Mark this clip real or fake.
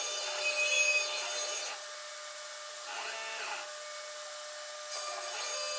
real